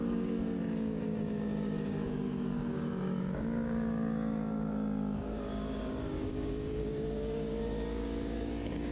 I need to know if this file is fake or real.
fake